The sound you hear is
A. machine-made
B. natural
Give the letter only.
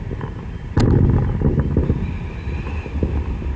B